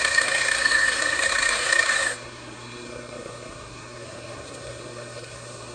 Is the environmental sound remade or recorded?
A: remade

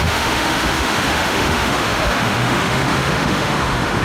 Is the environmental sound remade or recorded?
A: remade